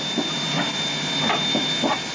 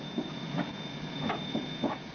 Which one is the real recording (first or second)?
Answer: first